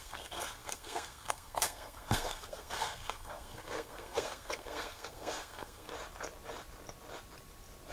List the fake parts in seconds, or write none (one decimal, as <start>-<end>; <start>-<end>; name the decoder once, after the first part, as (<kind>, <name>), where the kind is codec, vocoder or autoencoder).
0.0-5.9 (codec, SNAC)